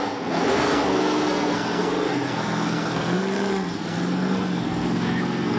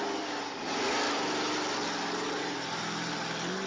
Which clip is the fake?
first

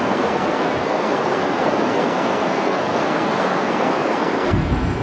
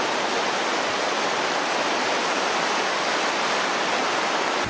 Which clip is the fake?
first